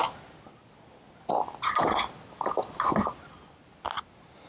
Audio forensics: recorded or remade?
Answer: recorded